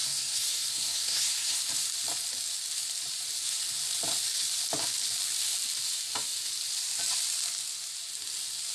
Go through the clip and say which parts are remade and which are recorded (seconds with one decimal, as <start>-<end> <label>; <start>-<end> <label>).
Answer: 0.0-1.6 remade; 1.6-8.7 recorded